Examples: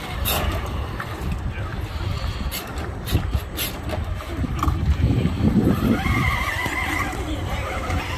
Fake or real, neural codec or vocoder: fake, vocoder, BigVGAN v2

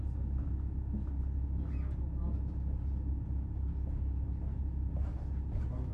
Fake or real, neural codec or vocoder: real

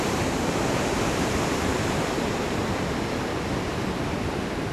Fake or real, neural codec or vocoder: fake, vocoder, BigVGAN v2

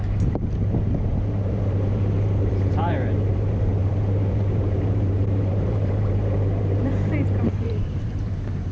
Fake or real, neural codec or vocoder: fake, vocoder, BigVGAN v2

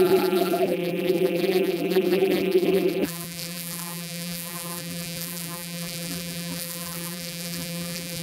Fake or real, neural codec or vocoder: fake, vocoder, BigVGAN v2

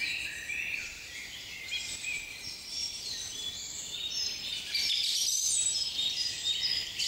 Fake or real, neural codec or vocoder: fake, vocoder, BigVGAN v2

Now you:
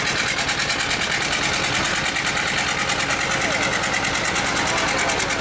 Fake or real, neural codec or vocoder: real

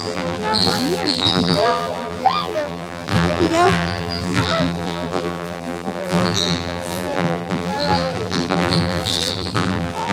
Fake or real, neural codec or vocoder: fake, vocoder, BigVGAN v2